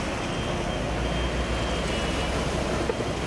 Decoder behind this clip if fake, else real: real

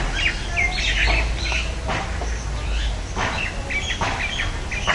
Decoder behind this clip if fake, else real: real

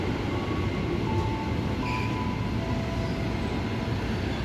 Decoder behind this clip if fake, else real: real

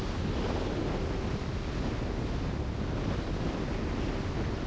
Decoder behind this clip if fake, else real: real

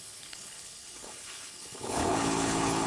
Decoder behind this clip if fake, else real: fake, codec, HILCodec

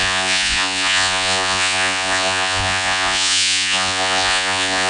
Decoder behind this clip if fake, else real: fake, vocoder, Vocos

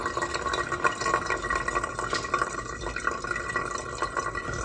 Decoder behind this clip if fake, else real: real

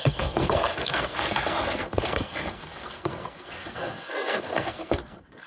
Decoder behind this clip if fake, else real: fake, codec, SNAC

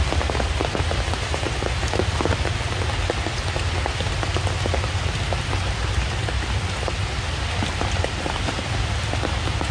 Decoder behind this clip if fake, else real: real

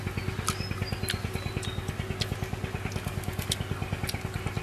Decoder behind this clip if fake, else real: real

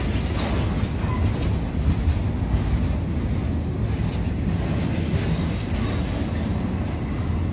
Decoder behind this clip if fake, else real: real